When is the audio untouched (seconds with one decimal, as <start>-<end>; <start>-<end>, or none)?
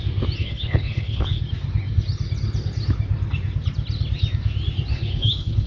0.0-0.4; 1.4-4.9